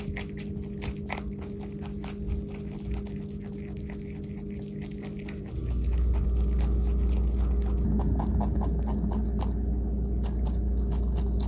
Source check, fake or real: real